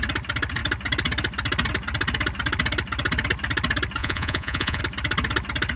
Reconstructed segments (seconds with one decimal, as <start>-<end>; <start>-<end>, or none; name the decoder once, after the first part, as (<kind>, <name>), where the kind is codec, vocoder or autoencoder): 4.0-4.8 (vocoder, Vocos)